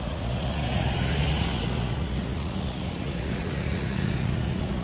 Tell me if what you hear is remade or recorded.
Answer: remade